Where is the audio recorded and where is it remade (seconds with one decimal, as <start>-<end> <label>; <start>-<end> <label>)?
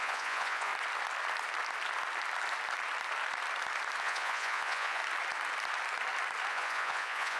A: 0.0-0.7 remade; 0.7-4.0 recorded; 4.0-5.0 remade; 5.0-6.5 recorded; 6.5-7.4 remade